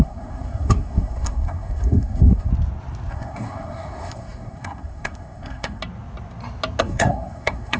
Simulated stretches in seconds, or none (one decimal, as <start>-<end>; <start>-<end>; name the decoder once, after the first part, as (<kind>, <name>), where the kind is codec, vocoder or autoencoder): 0.0-2.5 (codec, SNAC); 3.1-5.8; 6.8-7.8